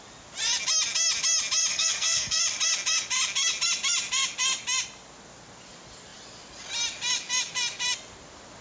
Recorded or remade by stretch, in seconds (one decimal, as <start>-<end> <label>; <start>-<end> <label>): 0.0-1.7 recorded; 1.7-2.4 remade; 2.4-8.6 recorded